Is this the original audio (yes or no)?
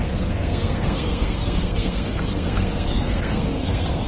no